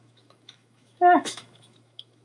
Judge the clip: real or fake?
fake